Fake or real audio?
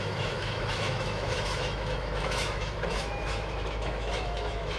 fake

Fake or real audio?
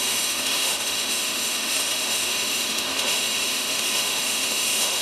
fake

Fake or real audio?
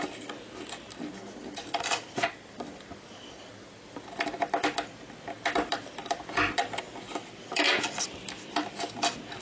real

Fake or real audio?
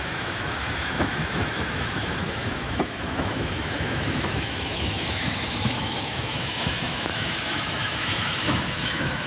fake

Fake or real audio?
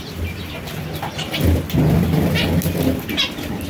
real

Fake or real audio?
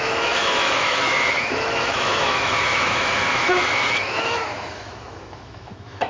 fake